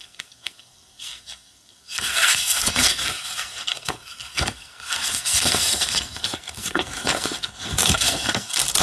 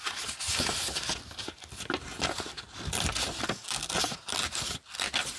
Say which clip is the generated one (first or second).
first